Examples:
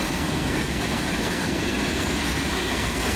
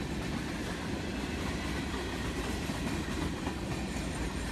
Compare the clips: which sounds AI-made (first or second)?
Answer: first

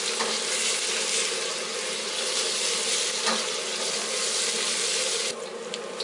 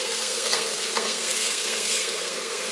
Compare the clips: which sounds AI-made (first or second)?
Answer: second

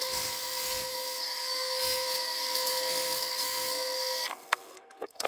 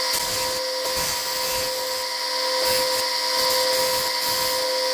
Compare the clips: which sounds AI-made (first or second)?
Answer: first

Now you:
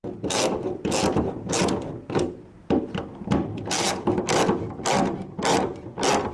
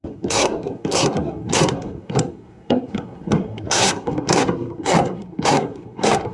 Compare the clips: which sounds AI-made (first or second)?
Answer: second